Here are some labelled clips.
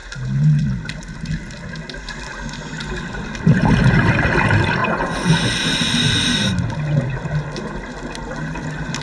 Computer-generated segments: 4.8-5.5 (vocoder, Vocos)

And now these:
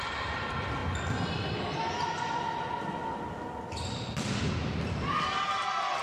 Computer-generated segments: none

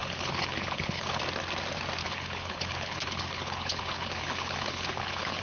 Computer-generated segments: 0.0-1.2 (codec, HILCodec); 2.0-5.4

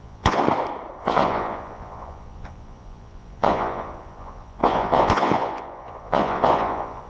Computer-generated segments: 0.0-0.4 (vocoder, Vocos); 1.0-7.1

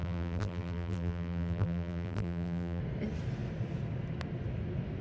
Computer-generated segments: 0.0-2.8 (vocoder, BigVGAN v2)